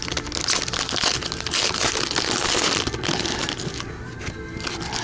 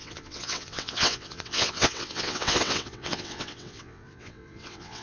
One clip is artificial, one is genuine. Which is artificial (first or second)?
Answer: second